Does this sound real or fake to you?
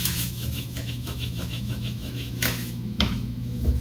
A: fake